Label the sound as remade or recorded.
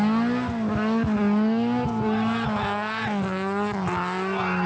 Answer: recorded